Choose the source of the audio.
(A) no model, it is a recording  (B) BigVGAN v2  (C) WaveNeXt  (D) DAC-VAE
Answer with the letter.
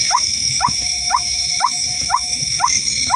D